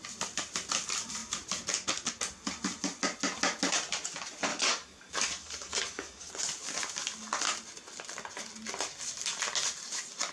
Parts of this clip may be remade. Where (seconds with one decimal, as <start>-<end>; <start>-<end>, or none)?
4.5-6.3